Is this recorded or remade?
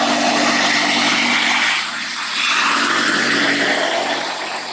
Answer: recorded